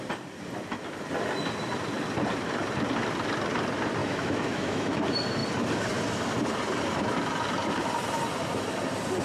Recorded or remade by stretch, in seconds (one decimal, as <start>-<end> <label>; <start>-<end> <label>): 0.0-4.0 recorded; 4.0-5.0 remade; 5.0-9.2 recorded